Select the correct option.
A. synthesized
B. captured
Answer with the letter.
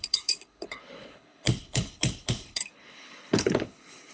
A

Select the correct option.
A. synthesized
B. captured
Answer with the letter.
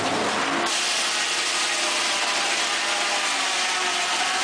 B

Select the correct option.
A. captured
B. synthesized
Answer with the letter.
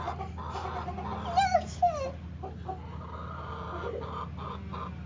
A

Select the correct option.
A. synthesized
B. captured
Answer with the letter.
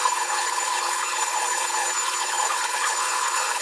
A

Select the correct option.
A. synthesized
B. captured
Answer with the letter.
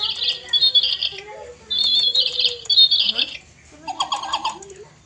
B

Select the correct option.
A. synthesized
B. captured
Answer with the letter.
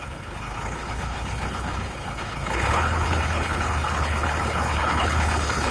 A